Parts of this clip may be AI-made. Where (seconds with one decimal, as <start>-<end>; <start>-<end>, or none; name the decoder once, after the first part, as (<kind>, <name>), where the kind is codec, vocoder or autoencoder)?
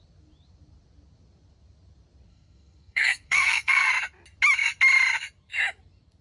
2.3-3.9 (codec, SNAC)